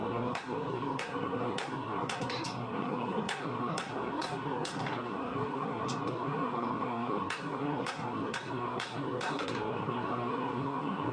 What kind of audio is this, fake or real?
fake